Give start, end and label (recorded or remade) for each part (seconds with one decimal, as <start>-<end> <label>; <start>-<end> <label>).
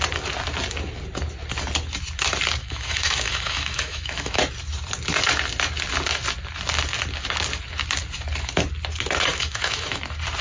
0.0-2.6 recorded; 2.6-4.4 remade; 4.4-9.3 recorded; 9.3-10.0 remade; 10.0-10.4 recorded